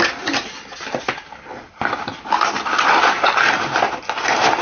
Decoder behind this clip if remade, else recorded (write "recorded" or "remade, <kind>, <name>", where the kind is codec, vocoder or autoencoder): recorded